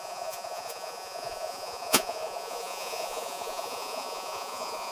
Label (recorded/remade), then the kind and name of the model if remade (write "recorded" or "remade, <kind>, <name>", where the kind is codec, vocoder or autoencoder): remade, vocoder, Vocos